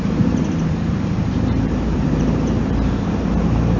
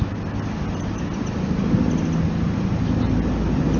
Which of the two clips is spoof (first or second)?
first